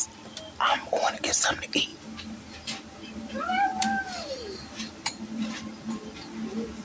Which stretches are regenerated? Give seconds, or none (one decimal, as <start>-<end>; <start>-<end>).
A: none